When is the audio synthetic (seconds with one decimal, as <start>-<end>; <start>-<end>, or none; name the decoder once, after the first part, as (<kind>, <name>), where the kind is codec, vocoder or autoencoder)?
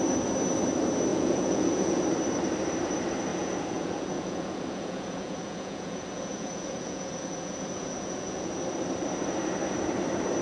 1.1-2.0 (vocoder, Vocos); 3.3-8.5